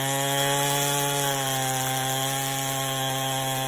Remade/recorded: recorded